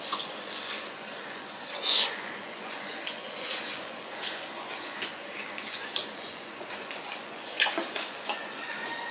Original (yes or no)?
no